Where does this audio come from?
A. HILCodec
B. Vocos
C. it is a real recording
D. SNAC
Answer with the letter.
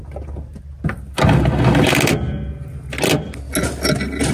C